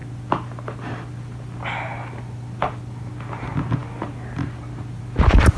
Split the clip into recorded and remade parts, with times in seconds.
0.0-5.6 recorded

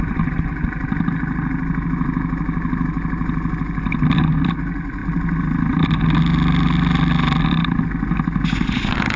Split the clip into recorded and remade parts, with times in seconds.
0.0-9.2 recorded

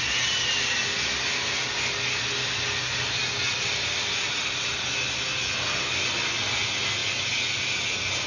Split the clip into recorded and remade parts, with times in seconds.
0.0-8.3 recorded

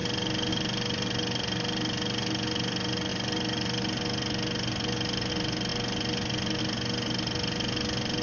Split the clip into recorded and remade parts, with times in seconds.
0.0-8.2 recorded

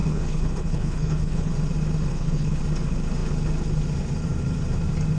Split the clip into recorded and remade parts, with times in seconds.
0.0-1.5 remade; 1.5-2.1 recorded; 2.1-2.6 remade; 2.6-5.2 recorded